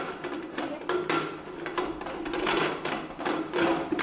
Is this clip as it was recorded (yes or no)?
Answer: yes